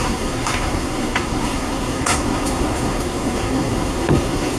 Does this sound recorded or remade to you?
remade